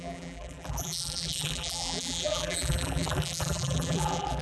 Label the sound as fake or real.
fake